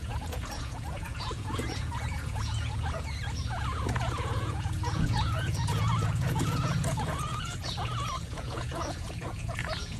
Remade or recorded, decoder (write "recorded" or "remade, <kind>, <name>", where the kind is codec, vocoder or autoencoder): remade, vocoder, Vocos